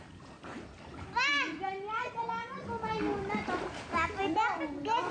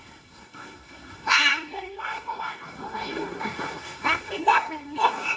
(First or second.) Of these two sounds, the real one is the first